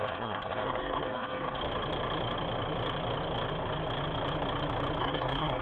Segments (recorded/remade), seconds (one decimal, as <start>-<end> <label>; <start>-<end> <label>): 0.0-1.6 remade; 1.6-5.0 recorded; 5.0-5.6 remade